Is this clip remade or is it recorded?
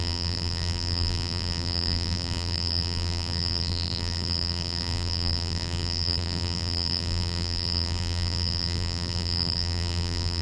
remade